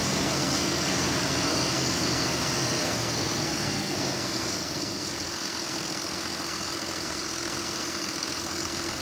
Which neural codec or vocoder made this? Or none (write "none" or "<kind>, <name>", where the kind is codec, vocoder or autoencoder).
codec, SNAC